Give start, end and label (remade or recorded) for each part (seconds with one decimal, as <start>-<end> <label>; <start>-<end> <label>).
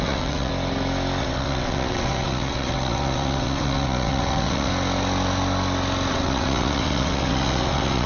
0.0-0.5 remade; 0.5-1.2 recorded; 1.2-4.7 remade; 4.7-6.1 recorded; 6.1-8.1 remade